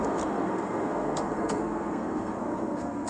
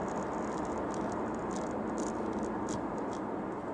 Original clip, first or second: second